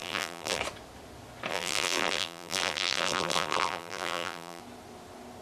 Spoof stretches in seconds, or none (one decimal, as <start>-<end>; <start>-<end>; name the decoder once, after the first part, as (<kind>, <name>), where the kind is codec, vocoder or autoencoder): 0.0-0.6 (vocoder, BigVGAN v2); 1.5-4.6